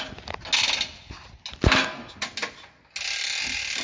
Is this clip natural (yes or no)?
yes